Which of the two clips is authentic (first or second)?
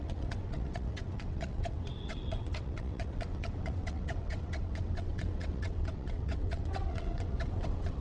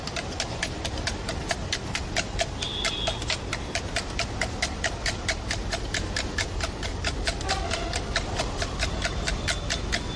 second